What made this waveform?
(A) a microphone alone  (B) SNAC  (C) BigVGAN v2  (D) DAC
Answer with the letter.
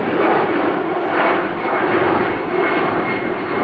A